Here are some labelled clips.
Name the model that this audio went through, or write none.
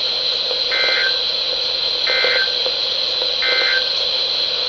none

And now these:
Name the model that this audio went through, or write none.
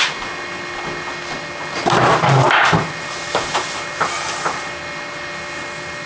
none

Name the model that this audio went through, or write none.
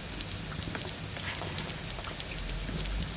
none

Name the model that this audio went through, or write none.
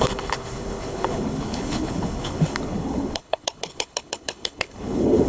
codec, HILCodec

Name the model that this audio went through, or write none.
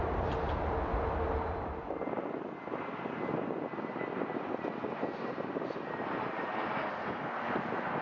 none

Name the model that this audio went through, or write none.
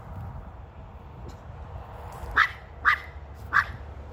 none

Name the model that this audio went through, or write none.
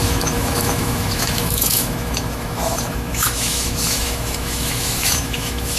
autoencoder, DAC-VAE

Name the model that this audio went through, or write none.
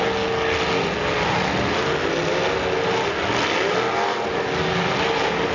none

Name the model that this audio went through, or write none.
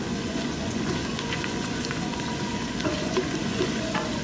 vocoder, Vocos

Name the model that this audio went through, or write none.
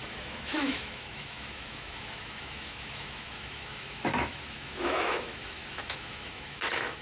autoencoder, DAC-VAE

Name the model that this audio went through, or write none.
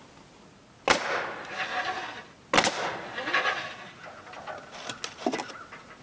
none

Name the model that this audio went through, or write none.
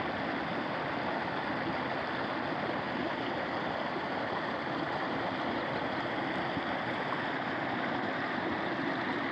none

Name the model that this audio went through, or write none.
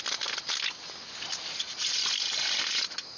none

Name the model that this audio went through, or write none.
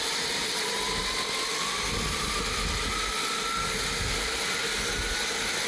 none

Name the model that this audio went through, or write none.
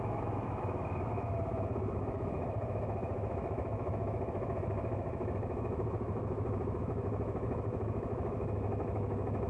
autoencoder, DAC-VAE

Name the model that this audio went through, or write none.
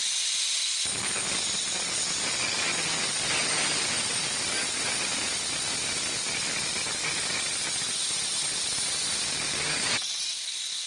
none